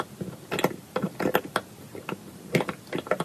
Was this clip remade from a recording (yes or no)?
no